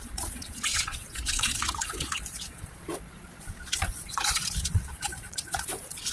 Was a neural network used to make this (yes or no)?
yes